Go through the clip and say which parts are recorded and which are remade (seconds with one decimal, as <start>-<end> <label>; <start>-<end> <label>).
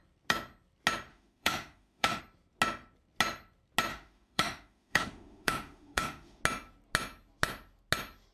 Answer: 0.0-1.1 recorded; 1.1-2.2 remade; 2.2-3.9 recorded; 3.9-6.4 remade; 6.4-8.3 recorded